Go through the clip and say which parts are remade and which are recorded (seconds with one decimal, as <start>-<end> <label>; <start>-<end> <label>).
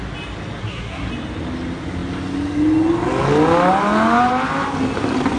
0.0-0.6 recorded; 0.6-1.1 remade; 1.1-5.4 recorded